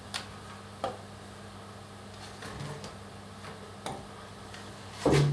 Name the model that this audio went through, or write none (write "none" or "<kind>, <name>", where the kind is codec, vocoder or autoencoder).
none